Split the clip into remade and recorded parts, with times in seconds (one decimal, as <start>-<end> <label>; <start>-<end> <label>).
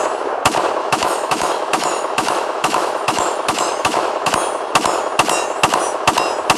0.0-0.8 recorded; 0.8-4.3 remade; 4.3-6.6 recorded